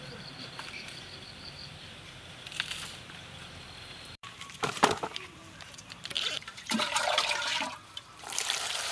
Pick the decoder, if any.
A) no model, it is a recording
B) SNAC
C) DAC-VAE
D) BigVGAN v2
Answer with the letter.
D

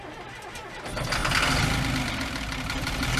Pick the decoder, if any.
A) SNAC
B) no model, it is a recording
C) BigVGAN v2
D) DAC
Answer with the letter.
B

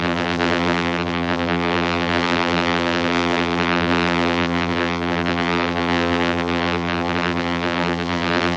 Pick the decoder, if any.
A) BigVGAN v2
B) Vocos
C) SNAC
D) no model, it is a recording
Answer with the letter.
A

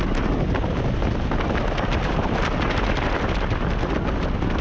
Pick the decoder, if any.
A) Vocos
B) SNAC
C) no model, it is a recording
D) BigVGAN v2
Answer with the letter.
D